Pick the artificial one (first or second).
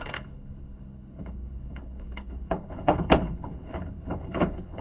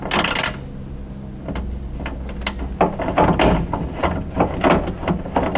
first